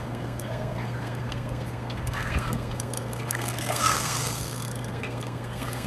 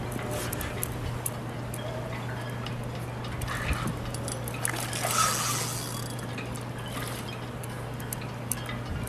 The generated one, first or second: first